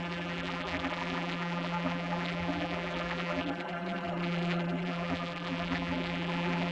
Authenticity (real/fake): fake